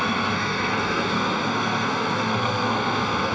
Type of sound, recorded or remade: remade